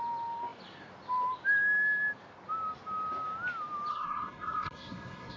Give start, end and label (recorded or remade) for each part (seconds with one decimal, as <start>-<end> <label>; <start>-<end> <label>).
0.0-3.9 recorded; 3.9-5.4 remade